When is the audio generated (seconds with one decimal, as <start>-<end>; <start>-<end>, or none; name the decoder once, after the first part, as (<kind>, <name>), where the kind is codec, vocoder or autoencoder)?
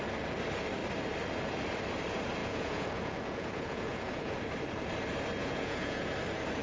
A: 2.4-4.4 (vocoder, Vocos); 5.4-6.1